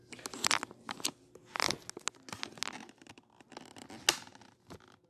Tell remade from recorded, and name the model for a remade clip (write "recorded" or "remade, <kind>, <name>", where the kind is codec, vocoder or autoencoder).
recorded